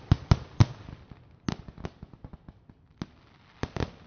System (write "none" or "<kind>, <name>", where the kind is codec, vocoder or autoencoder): none